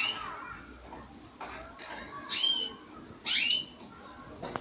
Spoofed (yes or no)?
no